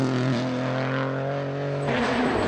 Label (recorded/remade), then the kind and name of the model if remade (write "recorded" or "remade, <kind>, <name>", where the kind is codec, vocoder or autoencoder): recorded